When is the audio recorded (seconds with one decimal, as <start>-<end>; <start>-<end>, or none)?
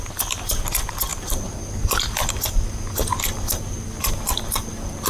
0.0-5.1